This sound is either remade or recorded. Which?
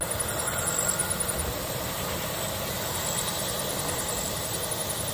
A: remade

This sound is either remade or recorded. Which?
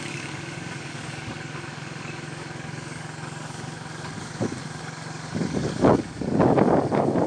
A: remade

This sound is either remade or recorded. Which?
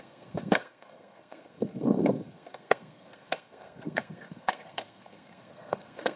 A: remade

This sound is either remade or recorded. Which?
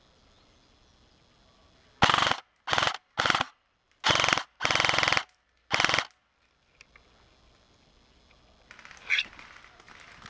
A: recorded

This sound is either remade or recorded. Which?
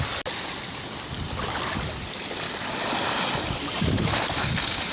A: recorded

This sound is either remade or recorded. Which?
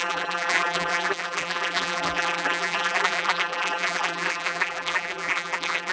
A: remade